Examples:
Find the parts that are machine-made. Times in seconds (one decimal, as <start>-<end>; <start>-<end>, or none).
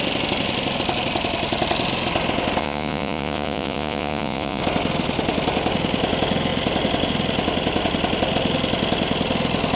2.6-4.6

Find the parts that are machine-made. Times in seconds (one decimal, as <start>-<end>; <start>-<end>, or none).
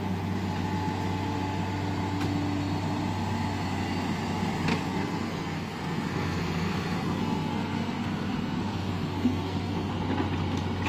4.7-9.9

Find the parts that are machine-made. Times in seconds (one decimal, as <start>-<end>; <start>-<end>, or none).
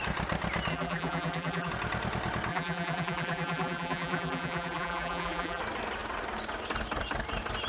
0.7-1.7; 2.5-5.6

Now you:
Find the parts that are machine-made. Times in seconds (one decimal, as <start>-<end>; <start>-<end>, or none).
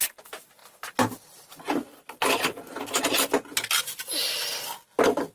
none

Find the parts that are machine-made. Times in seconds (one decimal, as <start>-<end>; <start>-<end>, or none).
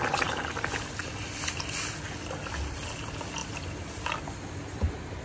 none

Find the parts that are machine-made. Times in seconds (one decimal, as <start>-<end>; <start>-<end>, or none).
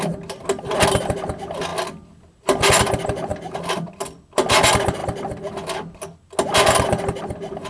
none